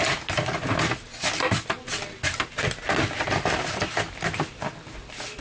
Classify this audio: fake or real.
real